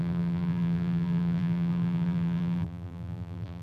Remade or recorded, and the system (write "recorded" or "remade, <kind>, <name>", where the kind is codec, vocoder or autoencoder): remade, vocoder, BigVGAN v2